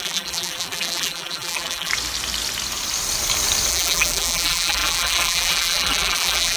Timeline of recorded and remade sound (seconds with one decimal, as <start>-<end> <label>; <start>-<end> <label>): 0.0-1.9 remade; 1.9-3.7 recorded; 3.7-6.6 remade